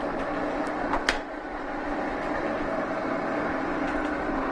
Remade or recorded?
recorded